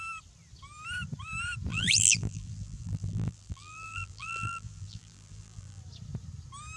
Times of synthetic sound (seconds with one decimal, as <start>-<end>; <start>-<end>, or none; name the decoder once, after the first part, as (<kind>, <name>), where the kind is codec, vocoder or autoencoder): 1.7-5.8 (vocoder, BigVGAN v2)

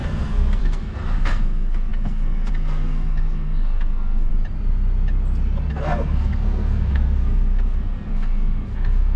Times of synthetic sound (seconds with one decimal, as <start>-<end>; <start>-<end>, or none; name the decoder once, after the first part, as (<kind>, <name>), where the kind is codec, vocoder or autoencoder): 0.0-4.3 (codec, SNAC); 5.7-9.2

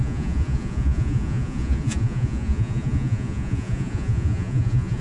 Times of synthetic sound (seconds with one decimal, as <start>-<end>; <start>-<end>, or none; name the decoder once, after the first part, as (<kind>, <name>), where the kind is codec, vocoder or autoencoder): 0.0-5.0 (vocoder, Vocos)

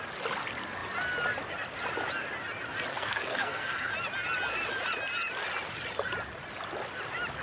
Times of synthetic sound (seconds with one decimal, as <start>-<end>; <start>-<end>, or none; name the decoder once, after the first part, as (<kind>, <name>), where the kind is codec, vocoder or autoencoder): 2.9-3.9 (codec, SNAC)

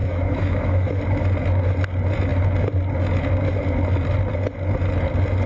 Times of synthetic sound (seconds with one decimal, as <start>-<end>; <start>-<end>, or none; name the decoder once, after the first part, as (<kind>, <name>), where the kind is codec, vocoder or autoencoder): 0.0-1.0 (autoencoder, DAC-VAE)